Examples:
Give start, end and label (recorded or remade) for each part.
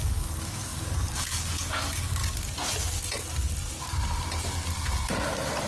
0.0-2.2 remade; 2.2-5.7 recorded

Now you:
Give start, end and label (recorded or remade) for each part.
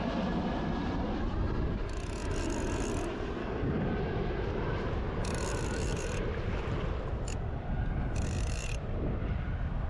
0.0-3.4 recorded; 3.4-3.9 remade; 3.9-9.9 recorded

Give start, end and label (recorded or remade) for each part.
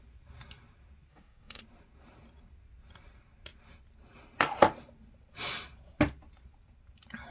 0.0-1.1 recorded; 1.1-1.6 remade; 1.6-7.3 recorded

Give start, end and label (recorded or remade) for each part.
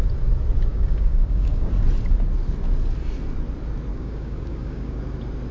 0.0-0.7 recorded; 0.7-1.7 remade; 1.7-3.9 recorded; 3.9-5.0 remade; 5.0-5.5 recorded